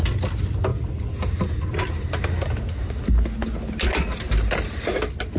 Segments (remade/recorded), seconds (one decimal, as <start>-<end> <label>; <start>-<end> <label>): 0.0-5.4 recorded